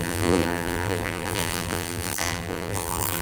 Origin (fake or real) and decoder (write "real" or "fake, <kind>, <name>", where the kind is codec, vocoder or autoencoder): fake, vocoder, BigVGAN v2